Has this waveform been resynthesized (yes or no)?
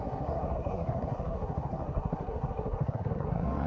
yes